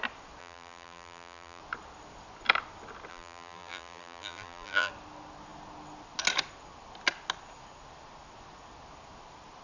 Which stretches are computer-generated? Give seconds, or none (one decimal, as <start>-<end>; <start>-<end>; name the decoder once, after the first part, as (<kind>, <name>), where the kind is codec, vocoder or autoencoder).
0.4-1.6 (vocoder, BigVGAN v2); 3.1-4.9